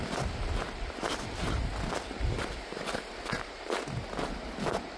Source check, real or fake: real